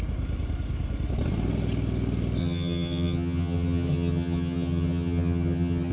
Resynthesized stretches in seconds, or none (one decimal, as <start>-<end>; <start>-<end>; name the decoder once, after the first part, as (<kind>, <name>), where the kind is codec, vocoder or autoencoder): 2.4-5.9 (vocoder, HiFi-GAN)